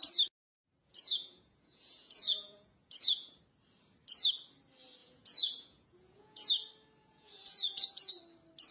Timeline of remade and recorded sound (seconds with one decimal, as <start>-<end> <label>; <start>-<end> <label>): 0.0-0.8 recorded; 0.8-3.4 remade; 3.4-5.0 recorded; 5.0-6.5 remade; 6.5-7.0 recorded; 7.0-8.1 remade; 8.1-8.7 recorded